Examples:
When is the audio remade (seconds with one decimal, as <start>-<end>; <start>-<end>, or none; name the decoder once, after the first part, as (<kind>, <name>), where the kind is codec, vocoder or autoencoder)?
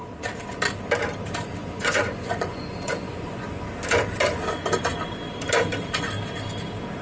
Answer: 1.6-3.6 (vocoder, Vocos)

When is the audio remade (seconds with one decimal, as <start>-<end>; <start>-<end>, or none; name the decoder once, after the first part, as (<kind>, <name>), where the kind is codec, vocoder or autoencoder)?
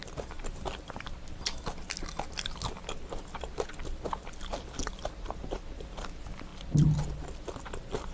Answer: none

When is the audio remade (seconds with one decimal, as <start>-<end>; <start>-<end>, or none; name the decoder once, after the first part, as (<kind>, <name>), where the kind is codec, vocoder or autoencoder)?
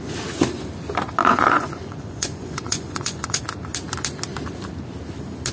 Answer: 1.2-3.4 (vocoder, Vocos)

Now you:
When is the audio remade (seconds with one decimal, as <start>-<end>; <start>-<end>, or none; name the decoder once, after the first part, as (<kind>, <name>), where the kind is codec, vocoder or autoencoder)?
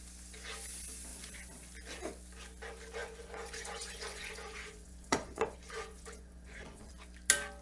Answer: 3.0-6.9 (vocoder, Vocos)